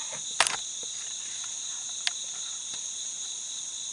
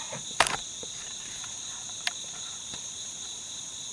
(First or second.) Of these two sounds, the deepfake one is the second